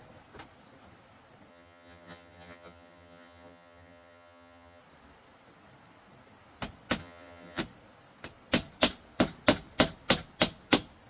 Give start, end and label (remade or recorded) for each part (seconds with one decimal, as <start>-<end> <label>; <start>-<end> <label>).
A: 0.0-1.5 recorded; 1.5-4.8 remade; 4.8-7.0 recorded; 7.0-7.6 remade; 7.6-11.1 recorded